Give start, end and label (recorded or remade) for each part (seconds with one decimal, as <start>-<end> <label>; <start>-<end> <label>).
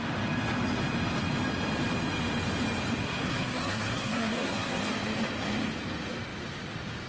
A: 0.0-3.0 recorded; 3.0-4.8 remade; 4.8-7.1 recorded